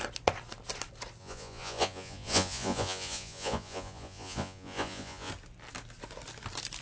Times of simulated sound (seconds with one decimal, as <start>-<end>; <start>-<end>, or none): 1.2-5.3